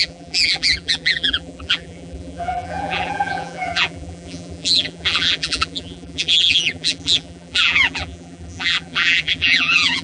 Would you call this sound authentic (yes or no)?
no